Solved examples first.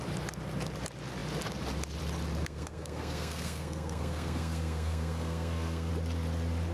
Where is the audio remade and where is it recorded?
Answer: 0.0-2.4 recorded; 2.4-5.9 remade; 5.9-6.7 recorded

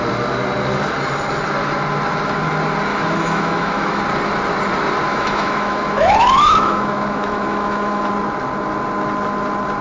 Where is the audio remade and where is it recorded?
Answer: 0.0-2.9 recorded; 2.9-4.0 remade; 4.0-5.1 recorded; 5.1-8.1 remade; 8.1-9.8 recorded

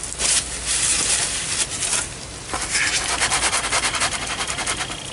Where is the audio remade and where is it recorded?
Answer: 0.0-5.1 recorded

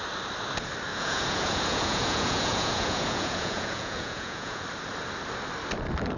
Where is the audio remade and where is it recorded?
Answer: 0.0-0.9 recorded; 0.9-4.6 remade; 4.6-6.2 recorded

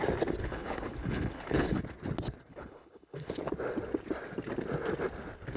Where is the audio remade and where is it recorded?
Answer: 0.0-0.4 recorded; 0.4-1.8 remade; 1.8-2.5 recorded; 2.5-3.4 remade; 3.4-5.6 recorded

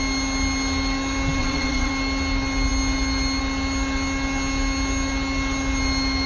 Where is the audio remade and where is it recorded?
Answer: 0.0-1.4 recorded; 1.4-1.9 remade; 1.9-6.3 recorded

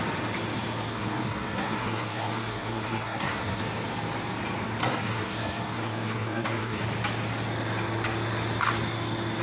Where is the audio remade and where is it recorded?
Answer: 0.0-0.9 recorded; 0.9-3.6 remade; 3.6-4.8 recorded; 4.8-6.8 remade; 6.8-9.4 recorded